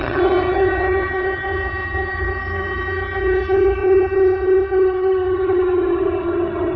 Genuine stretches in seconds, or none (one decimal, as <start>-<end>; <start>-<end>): none